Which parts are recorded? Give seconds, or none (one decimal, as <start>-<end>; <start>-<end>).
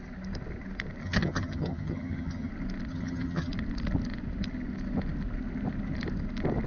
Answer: 0.0-1.0; 2.5-2.9; 3.5-6.7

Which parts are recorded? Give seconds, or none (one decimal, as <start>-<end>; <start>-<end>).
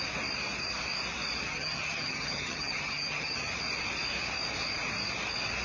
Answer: 0.0-1.5; 3.5-5.6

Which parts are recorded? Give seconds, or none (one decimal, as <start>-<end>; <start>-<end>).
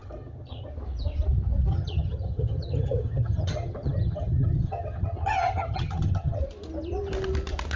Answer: 0.7-1.7; 6.4-7.8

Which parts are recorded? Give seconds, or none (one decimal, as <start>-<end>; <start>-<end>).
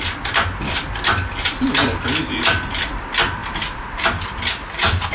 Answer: 0.0-5.1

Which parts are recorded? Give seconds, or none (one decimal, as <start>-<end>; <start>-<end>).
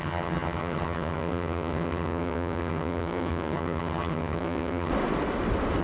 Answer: 4.9-5.8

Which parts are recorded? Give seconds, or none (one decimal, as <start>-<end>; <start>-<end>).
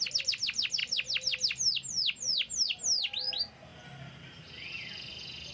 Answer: 0.0-5.5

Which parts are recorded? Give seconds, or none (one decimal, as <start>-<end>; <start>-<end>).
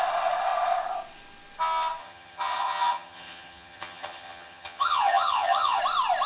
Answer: 0.0-2.0; 5.8-6.3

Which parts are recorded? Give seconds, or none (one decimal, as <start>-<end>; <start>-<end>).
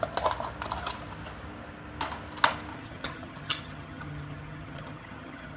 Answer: 0.0-2.7